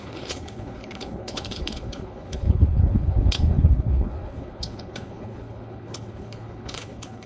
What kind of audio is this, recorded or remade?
remade